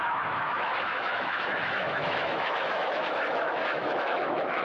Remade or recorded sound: remade